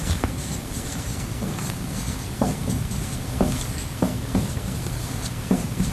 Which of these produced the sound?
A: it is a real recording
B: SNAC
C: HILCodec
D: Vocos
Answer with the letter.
B